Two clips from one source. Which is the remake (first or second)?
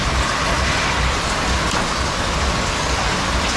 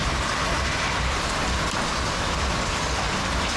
second